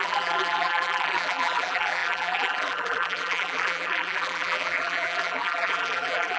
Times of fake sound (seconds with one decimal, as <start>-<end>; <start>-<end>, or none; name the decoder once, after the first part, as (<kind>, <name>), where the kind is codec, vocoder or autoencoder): 0.0-6.4 (vocoder, BigVGAN v2)